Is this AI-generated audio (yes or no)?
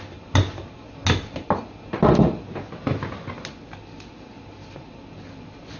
no